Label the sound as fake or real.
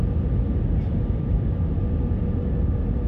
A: real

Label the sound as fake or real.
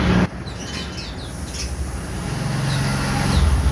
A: real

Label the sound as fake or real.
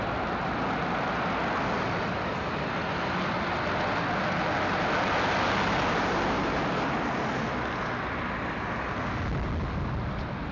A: real